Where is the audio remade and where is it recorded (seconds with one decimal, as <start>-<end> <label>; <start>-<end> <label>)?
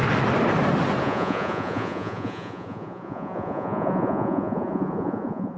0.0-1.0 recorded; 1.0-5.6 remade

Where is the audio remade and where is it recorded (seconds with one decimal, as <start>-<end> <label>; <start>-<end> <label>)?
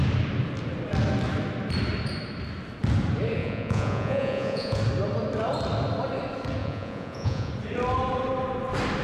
0.0-3.4 recorded; 3.4-4.8 remade; 4.8-6.6 recorded; 6.6-7.5 remade; 7.5-9.0 recorded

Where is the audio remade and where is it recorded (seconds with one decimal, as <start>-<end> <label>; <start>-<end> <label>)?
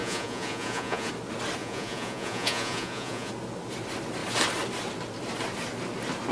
0.0-1.1 remade; 1.1-1.6 recorded; 1.6-3.3 remade; 3.3-6.3 recorded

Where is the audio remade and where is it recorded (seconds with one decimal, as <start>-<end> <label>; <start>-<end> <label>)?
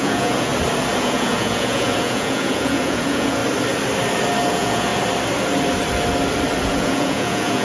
0.0-0.5 remade; 0.5-1.0 recorded; 1.0-3.4 remade; 3.4-4.5 recorded; 4.5-4.9 remade; 4.9-6.6 recorded; 6.6-7.6 remade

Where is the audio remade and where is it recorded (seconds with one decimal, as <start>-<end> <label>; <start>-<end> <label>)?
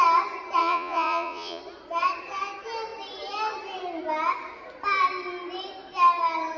0.0-0.6 recorded; 0.6-1.6 remade; 1.6-6.6 recorded